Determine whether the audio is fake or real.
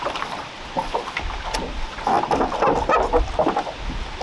real